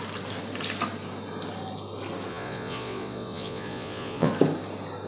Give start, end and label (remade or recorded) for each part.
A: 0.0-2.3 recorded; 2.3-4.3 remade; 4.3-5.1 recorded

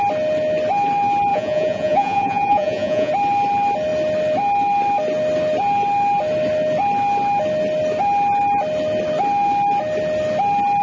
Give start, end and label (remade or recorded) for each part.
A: 0.0-1.3 recorded; 1.3-3.1 remade; 3.1-10.8 recorded

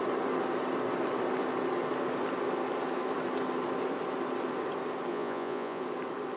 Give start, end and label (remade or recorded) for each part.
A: 0.0-5.1 recorded; 5.1-5.8 remade; 5.8-6.4 recorded